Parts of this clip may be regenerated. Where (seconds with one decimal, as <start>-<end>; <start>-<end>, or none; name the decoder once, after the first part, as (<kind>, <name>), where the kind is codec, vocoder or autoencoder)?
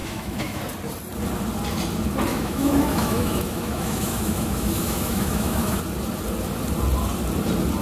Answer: 0.0-0.6 (autoencoder, DAC-VAE); 2.3-5.8